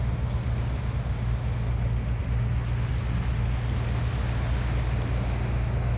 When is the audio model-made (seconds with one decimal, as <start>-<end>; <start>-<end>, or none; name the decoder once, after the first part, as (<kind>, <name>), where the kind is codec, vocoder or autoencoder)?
none